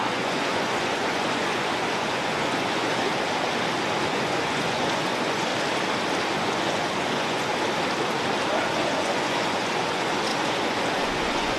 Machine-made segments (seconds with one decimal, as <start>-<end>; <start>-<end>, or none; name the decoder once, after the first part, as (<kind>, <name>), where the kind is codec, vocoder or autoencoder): 0.0-3.1 (vocoder, Vocos); 4.0-5.5; 6.3-7.5; 8.6-11.6